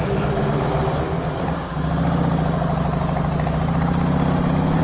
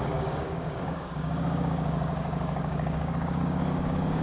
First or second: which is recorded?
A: first